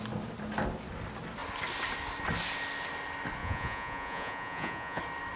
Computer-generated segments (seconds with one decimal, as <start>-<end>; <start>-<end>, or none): 3.4-5.0